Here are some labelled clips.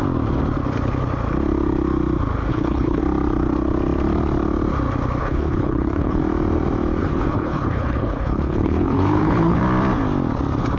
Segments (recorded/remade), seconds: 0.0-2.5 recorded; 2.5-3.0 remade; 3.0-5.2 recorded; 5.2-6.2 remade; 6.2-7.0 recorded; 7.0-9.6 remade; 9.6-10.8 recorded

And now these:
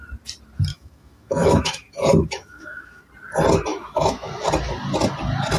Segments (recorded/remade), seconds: 0.0-0.7 recorded; 0.7-3.1 remade; 3.1-3.7 recorded; 3.7-4.3 remade; 4.3-5.6 recorded

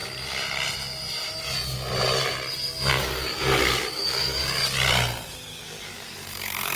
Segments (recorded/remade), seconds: 0.0-2.9 recorded; 2.9-4.6 remade; 4.6-5.5 recorded; 5.5-6.8 remade

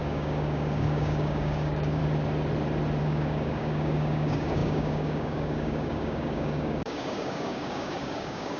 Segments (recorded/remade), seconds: 0.0-2.0 remade; 2.0-3.0 recorded; 3.0-8.6 remade